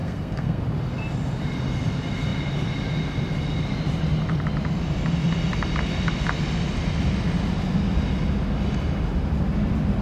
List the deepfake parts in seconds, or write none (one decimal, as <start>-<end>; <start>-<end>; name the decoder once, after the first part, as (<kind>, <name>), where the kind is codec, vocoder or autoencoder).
0.0-0.6 (codec, SNAC)